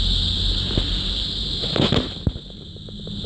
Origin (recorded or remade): recorded